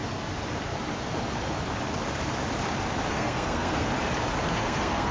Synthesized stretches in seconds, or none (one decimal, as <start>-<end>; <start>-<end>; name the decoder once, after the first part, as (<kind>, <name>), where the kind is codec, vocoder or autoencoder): 3.1-3.9 (codec, SNAC); 4.5-5.1